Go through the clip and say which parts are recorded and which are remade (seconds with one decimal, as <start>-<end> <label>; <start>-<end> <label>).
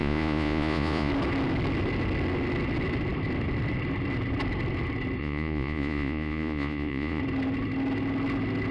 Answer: 0.0-1.1 remade; 1.1-5.2 recorded; 5.2-7.2 remade; 7.2-8.7 recorded